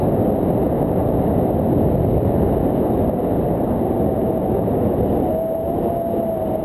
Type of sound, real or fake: real